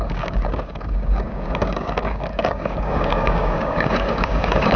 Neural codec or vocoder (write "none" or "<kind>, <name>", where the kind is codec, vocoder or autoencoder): codec, DAC